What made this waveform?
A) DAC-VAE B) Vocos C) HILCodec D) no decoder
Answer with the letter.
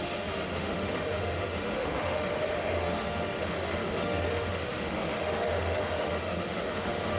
A